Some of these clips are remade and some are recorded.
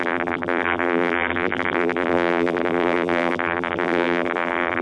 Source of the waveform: remade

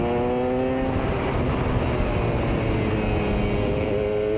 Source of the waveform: recorded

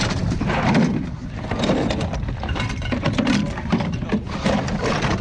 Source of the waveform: recorded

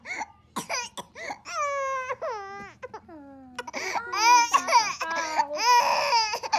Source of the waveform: recorded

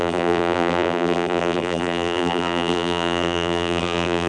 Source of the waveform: remade